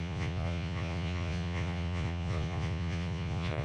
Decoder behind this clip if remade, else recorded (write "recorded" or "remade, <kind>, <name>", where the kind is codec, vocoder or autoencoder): remade, vocoder, Vocos